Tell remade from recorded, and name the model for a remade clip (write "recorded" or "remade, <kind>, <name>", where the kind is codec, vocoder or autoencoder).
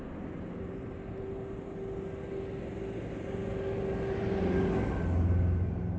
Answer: recorded